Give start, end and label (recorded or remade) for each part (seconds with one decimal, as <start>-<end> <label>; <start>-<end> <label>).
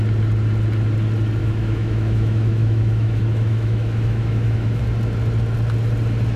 0.0-1.4 recorded; 1.4-4.8 remade; 4.8-6.4 recorded